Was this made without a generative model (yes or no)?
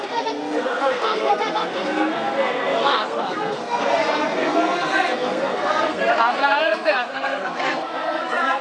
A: no